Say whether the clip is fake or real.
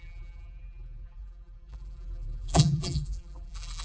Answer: fake